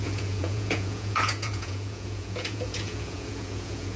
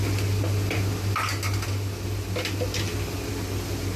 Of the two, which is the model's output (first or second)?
first